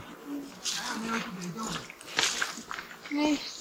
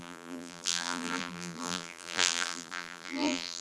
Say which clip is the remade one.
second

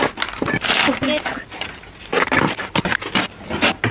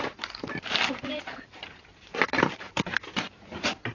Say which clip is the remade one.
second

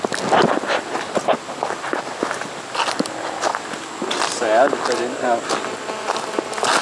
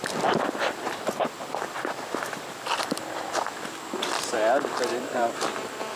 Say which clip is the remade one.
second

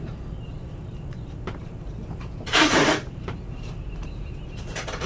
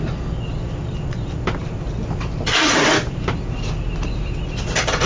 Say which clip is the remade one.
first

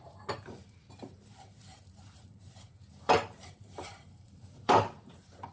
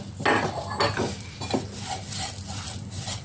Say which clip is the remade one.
first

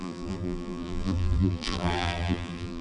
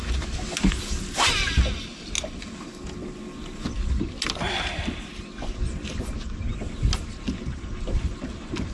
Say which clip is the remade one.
first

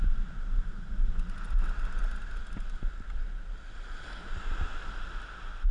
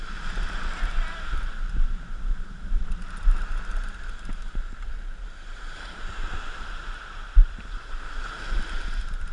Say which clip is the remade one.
second